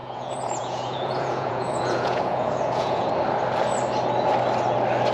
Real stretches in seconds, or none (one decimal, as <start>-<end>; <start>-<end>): 3.1-5.1